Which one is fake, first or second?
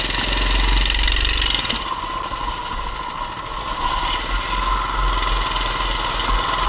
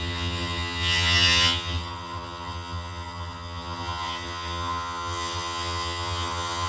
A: second